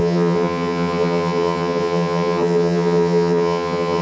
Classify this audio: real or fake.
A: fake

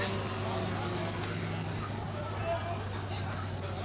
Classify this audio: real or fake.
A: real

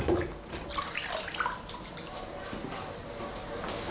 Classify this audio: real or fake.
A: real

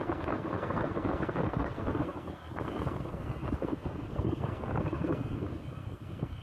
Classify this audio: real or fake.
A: fake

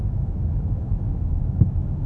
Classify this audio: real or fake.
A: fake